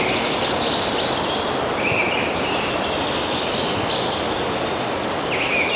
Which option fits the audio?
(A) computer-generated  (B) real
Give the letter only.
B